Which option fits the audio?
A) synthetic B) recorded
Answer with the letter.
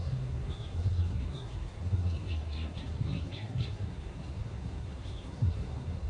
A